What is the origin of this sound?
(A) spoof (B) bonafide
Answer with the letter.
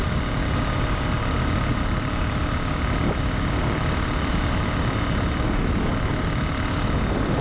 B